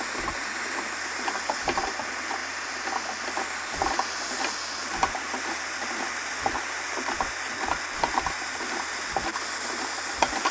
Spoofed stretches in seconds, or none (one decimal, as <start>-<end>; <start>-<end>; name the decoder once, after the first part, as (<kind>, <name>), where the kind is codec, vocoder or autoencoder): none